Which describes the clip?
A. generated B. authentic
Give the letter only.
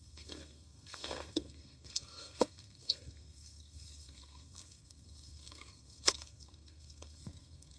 A